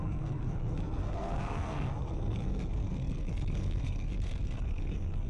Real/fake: fake